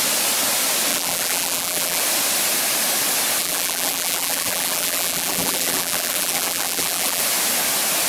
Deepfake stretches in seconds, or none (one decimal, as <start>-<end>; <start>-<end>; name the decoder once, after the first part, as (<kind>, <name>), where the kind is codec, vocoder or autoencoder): 0.9-2.0 (vocoder, BigVGAN v2); 3.4-7.2